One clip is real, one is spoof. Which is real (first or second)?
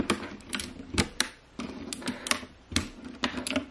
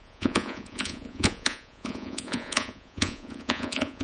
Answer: first